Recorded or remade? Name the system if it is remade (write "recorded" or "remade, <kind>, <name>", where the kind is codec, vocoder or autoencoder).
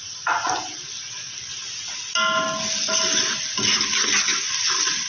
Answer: recorded